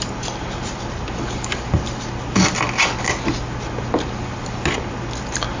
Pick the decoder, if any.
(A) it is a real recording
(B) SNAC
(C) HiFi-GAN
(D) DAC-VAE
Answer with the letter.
A